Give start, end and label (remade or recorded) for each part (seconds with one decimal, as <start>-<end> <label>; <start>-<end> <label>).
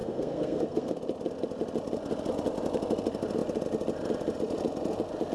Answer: 0.0-1.0 remade; 1.0-5.3 recorded